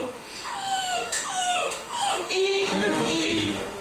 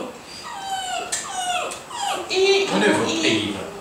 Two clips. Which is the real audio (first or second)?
second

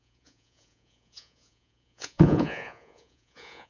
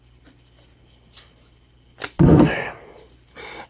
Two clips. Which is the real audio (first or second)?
second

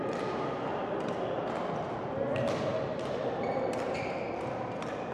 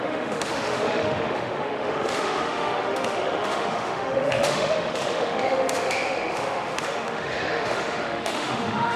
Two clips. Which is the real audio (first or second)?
first